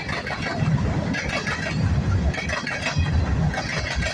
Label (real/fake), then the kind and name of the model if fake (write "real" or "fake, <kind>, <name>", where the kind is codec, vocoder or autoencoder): real